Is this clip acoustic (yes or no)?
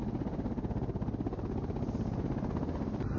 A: yes